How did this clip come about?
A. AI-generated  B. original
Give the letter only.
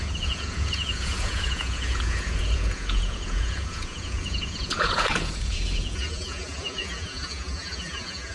A